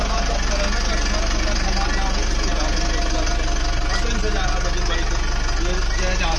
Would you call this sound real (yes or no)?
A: yes